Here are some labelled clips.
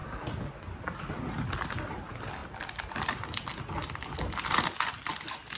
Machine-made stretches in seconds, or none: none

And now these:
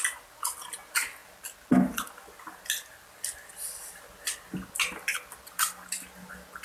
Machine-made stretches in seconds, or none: none

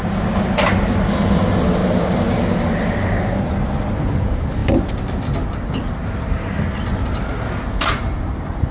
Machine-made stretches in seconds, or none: none

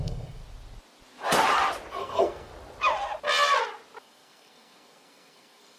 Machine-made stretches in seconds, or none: 0.0-0.4 (codec, SNAC); 1.9-2.5; 4.0-5.8

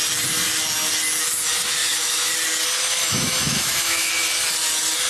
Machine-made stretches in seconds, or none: 1.8-2.3 (autoencoder, DAC-VAE); 3.0-4.1

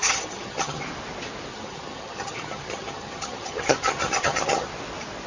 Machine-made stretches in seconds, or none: 0.0-0.8 (vocoder, HiFi-GAN); 1.5-4.7

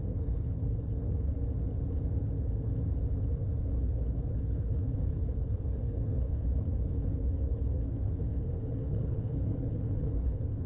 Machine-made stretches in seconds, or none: 0.0-1.3 (codec, HILCodec); 3.6-10.7

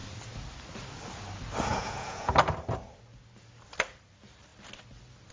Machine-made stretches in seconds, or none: 1.7-2.3 (vocoder, Vocos)